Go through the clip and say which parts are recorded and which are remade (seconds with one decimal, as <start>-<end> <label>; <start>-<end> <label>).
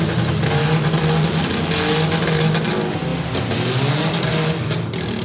0.0-5.2 recorded